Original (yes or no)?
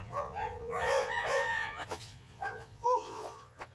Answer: no